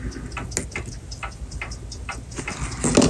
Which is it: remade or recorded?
recorded